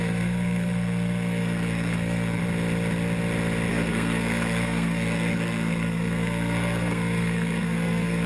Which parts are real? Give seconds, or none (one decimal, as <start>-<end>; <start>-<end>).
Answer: 2.4-3.7